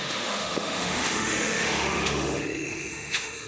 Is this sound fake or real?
fake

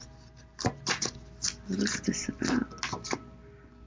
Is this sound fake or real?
real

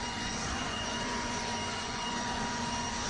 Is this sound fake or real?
fake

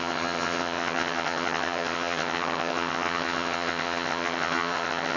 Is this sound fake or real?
fake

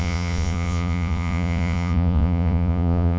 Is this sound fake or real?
fake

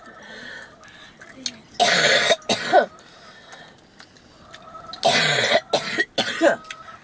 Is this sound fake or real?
real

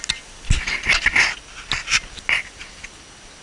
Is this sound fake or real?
real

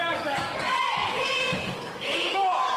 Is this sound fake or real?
fake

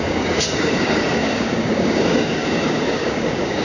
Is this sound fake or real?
fake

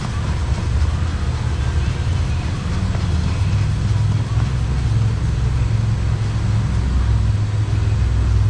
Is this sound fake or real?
real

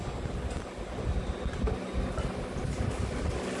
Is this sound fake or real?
real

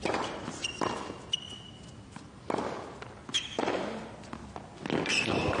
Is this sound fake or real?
real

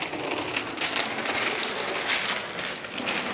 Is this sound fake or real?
real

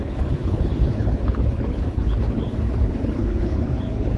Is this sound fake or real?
fake